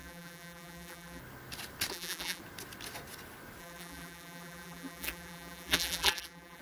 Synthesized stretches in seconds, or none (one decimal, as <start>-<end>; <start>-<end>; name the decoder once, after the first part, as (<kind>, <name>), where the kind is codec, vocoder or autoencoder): 0.0-1.2 (vocoder, BigVGAN v2); 1.9-2.4; 3.6-6.6